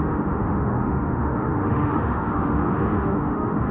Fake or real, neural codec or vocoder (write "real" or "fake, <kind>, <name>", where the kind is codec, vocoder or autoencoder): fake, autoencoder, DAC-VAE